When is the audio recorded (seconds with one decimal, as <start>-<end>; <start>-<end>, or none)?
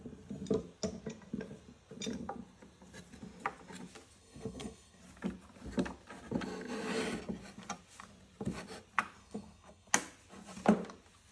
0.0-4.2; 5.0-9.2; 9.9-11.3